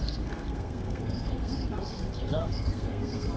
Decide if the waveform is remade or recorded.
remade